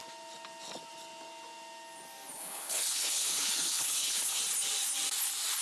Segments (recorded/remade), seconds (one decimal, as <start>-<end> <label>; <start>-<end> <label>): 0.0-2.3 recorded; 2.3-4.4 remade; 4.4-5.6 recorded